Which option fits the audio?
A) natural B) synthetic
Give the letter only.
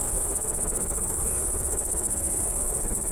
B